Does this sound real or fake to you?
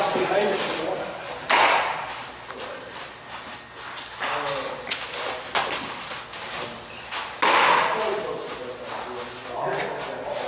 real